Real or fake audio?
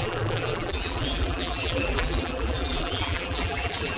fake